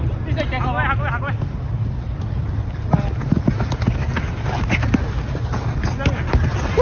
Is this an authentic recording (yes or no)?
yes